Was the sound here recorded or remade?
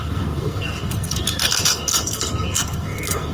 remade